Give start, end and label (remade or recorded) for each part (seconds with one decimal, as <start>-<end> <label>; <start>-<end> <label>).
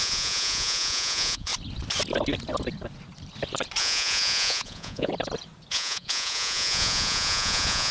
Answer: 0.0-1.5 remade; 1.5-3.8 recorded; 3.8-5.1 remade; 5.1-5.7 recorded; 5.7-7.9 remade